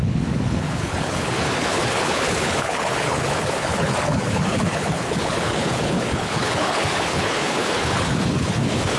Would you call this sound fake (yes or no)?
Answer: yes